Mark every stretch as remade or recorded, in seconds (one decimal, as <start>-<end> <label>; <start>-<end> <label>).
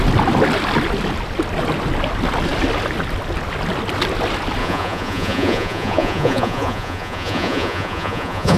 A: 0.0-4.6 recorded; 4.6-8.6 remade